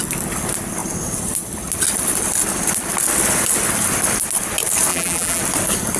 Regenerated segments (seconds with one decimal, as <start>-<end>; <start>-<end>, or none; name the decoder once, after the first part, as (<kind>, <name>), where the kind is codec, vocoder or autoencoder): 4.9-5.4 (vocoder, BigVGAN v2)